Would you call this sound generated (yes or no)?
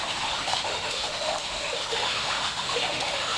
yes